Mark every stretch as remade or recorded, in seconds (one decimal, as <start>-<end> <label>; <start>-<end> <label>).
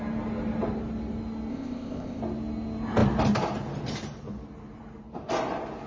0.0-1.5 recorded; 1.5-2.2 remade; 2.2-5.9 recorded